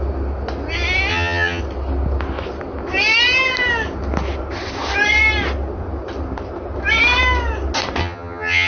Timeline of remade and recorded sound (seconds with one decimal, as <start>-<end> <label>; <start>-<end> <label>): 0.0-1.1 recorded; 1.1-1.6 remade; 1.6-8.0 recorded; 8.0-8.7 remade